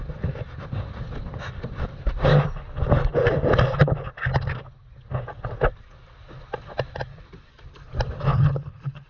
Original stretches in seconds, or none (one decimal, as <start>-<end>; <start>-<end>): 0.0-8.3